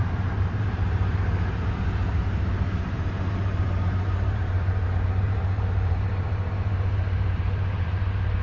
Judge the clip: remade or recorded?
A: remade